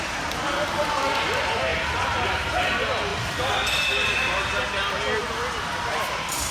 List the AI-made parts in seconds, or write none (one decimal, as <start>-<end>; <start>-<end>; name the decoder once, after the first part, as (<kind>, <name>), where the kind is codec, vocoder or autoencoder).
none